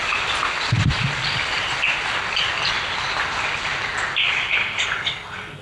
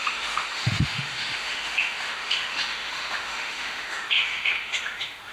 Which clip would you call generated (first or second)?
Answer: second